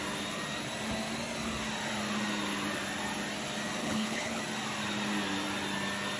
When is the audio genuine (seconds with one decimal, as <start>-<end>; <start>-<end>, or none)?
0.0-3.8; 4.4-6.2